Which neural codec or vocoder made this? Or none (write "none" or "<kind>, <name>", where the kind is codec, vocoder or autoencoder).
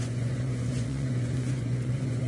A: vocoder, Vocos